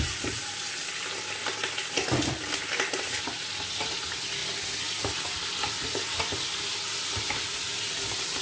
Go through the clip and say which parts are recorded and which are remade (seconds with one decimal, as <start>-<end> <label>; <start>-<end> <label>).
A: 0.0-8.4 recorded